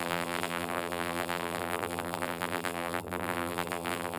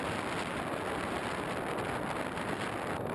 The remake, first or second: first